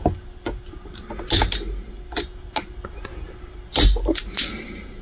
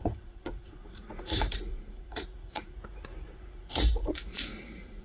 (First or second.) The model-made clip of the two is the second